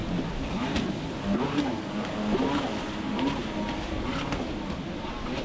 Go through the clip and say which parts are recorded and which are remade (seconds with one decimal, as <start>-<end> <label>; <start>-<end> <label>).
0.0-1.6 recorded; 1.6-2.2 remade; 2.2-5.4 recorded